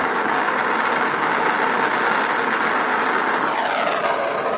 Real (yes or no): yes